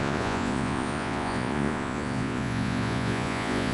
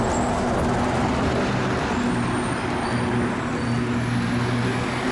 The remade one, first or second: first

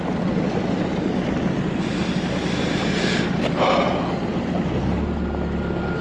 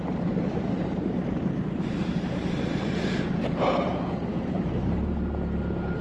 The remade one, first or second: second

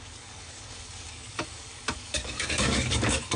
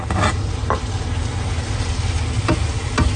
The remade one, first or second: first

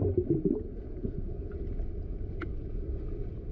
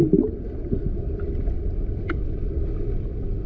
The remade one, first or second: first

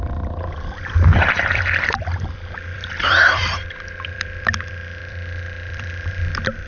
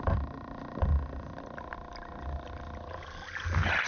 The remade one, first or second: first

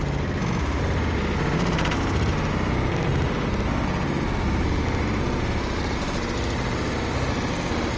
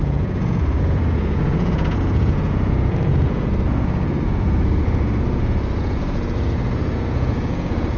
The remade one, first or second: second